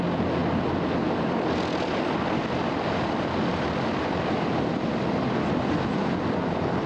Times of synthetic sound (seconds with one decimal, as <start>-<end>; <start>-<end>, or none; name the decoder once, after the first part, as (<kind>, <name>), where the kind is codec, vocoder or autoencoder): none